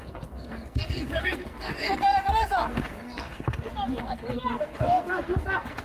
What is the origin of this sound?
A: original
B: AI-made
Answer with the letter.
B